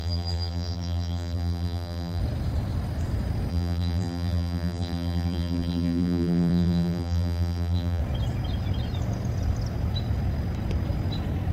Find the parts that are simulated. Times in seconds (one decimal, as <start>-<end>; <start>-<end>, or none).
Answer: 0.0-2.2; 3.5-8.0